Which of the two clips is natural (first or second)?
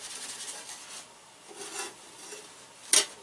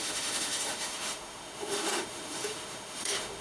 first